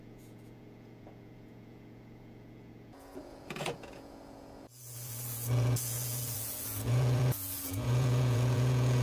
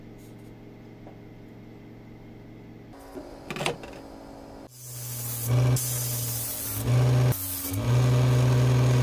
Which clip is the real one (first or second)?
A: second